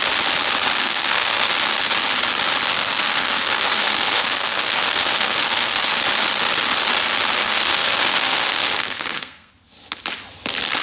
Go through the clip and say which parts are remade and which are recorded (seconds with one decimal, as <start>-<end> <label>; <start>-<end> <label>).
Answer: 0.0-0.8 recorded; 0.8-1.5 remade; 1.5-2.7 recorded; 2.7-5.9 remade; 5.9-7.4 recorded; 7.4-9.5 remade; 9.5-10.8 recorded